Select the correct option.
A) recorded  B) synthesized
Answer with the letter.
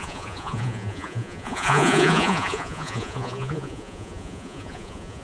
B